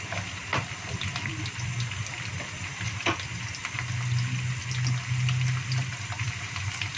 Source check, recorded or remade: recorded